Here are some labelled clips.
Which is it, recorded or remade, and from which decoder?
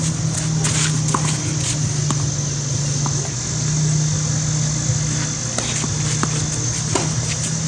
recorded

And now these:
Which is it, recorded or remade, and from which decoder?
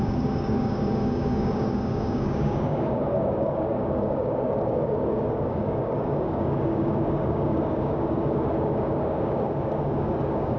remade, codec, DAC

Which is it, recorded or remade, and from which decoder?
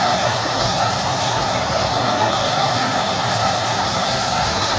remade, codec, SNAC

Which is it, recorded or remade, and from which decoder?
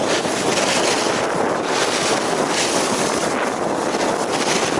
recorded